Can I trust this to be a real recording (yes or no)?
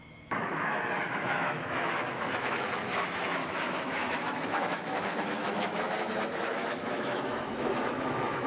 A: no